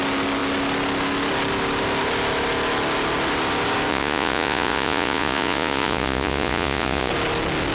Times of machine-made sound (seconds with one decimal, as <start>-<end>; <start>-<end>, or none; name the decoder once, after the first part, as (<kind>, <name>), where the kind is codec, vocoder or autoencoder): 3.9-7.1 (vocoder, Vocos)